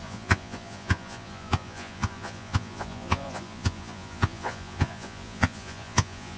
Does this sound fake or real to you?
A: fake